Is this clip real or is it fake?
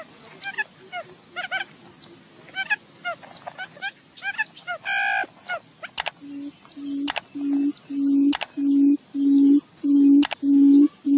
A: real